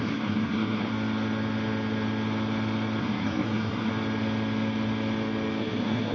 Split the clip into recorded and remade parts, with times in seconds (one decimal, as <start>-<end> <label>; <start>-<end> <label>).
0.0-0.9 remade; 0.9-3.0 recorded; 3.0-3.9 remade; 3.9-5.6 recorded; 5.6-6.1 remade